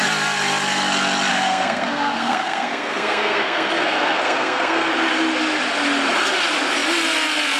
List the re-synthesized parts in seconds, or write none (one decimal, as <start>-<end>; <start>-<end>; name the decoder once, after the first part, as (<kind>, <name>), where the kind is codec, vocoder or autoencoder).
1.3-4.9 (codec, SNAC)